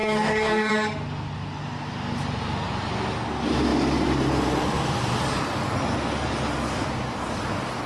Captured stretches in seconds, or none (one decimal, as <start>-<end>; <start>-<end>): 0.7-7.9